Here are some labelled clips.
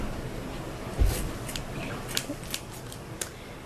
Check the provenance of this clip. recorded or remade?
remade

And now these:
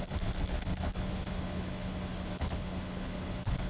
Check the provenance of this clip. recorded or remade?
remade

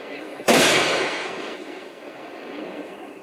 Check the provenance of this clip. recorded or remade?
remade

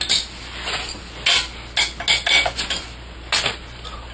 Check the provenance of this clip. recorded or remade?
recorded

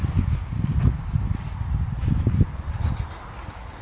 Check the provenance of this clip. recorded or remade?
recorded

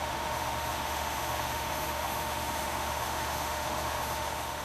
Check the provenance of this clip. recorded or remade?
remade